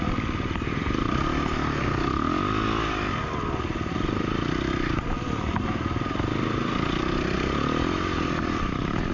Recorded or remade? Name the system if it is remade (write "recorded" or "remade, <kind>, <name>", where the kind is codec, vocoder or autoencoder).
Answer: recorded